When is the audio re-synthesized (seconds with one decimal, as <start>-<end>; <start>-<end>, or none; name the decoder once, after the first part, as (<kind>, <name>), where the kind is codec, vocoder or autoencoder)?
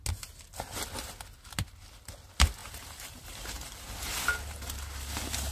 2.6-4.2 (vocoder, BigVGAN v2)